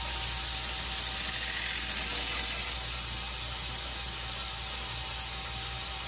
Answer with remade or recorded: recorded